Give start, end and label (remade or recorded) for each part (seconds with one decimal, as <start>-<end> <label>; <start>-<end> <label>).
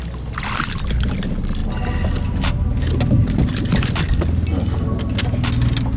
0.0-6.0 recorded